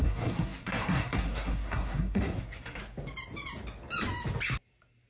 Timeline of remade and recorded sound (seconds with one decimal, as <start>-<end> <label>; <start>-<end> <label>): 0.0-2.8 remade; 2.8-5.1 recorded